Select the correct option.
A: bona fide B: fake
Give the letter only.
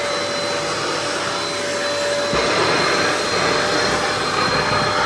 A